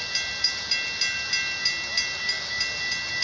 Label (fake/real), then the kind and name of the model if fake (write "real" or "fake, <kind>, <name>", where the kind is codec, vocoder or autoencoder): real